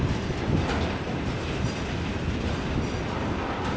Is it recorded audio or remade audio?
recorded